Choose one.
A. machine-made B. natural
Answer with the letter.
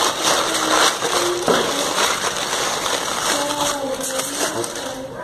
B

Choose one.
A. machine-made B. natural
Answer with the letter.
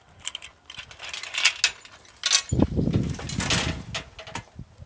B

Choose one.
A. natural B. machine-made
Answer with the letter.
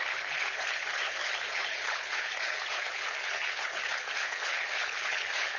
B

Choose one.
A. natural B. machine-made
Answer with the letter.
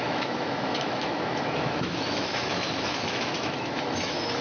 B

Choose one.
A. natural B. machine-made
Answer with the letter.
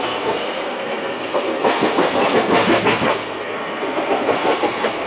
B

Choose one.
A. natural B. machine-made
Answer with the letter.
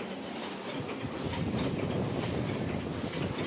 A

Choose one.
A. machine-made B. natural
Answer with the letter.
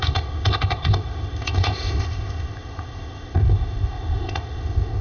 A